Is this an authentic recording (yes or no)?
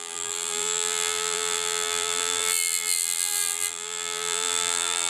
no